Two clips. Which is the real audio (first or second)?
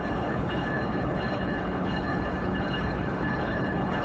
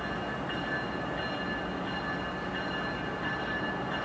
second